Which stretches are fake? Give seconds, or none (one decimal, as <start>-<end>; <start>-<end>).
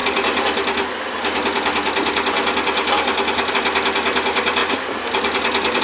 none